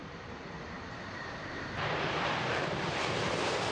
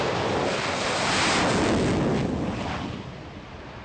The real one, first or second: second